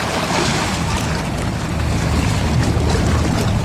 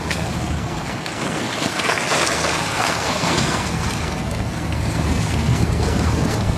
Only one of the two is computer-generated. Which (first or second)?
second